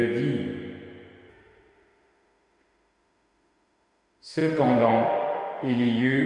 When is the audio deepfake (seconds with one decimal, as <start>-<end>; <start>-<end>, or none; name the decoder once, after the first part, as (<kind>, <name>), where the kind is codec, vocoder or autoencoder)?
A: 1.3-6.3 (autoencoder, DAC-VAE)